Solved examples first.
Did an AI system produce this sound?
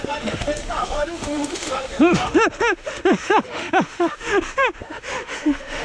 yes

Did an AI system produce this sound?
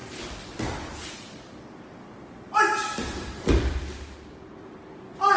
no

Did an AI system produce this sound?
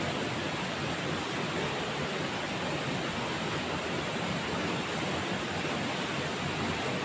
no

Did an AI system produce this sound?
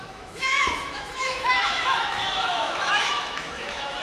yes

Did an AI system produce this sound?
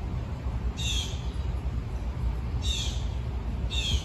no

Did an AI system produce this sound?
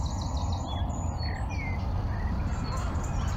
no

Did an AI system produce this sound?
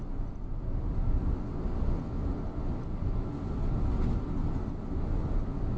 no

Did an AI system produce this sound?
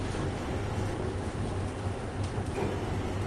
no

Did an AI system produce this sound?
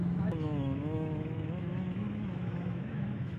yes